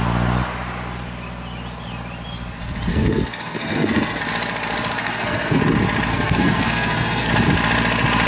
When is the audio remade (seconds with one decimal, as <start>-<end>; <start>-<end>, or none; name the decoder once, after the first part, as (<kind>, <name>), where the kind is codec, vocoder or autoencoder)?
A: 2.9-4.2 (codec, SNAC); 5.0-5.6; 6.1-7.3